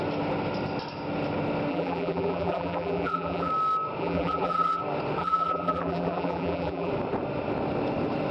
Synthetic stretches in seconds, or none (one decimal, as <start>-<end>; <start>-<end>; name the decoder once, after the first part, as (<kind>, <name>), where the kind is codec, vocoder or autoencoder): 1.7-3.5 (vocoder, BigVGAN v2); 4.0-4.8; 5.2-6.9